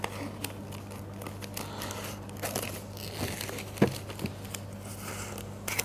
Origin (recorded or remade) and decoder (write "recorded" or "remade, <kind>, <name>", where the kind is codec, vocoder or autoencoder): recorded